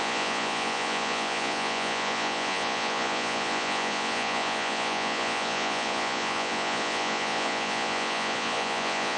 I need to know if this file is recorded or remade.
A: remade